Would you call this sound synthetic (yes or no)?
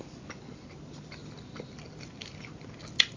no